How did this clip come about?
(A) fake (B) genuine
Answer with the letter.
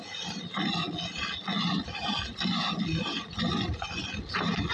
B